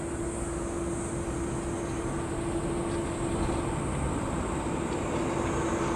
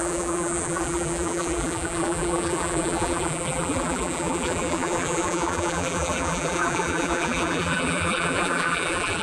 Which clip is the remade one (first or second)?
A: second